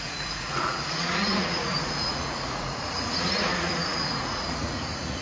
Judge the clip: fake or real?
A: fake